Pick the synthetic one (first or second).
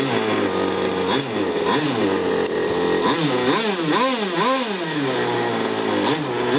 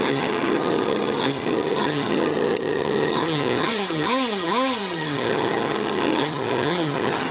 second